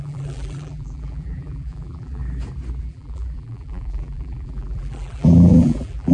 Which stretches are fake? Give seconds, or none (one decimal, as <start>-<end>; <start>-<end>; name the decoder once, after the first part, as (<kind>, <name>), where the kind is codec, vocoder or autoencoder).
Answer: 0.0-2.2 (vocoder, BigVGAN v2); 2.8-6.1